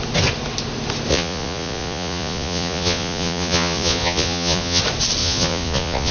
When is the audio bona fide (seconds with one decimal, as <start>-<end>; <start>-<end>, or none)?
0.0-1.1; 4.8-5.2